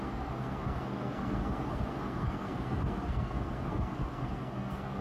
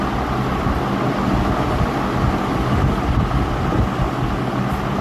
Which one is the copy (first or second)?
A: first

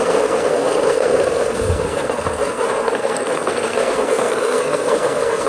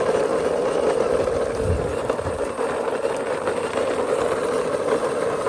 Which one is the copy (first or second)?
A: first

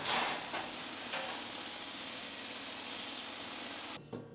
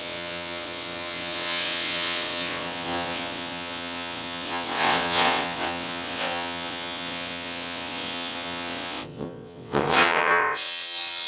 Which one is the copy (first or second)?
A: second